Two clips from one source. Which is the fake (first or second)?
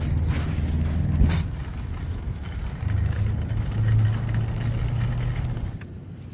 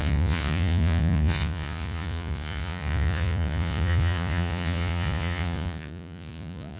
second